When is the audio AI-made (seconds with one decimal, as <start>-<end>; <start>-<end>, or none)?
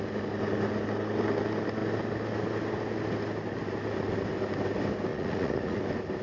5.1-5.8